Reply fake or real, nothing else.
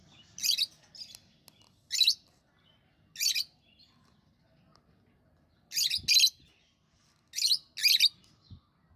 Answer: real